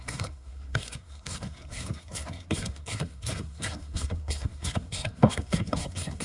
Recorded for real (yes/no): no